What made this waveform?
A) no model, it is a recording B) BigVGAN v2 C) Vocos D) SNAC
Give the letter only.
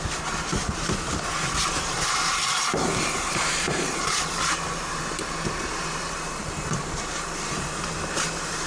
B